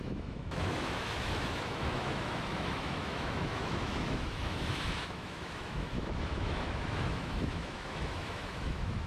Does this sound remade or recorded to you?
remade